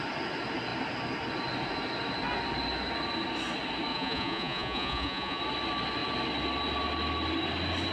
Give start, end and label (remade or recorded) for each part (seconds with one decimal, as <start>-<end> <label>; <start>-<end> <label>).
0.0-3.9 recorded; 3.9-5.4 remade; 5.4-7.9 recorded